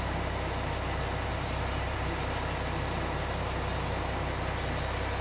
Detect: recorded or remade recorded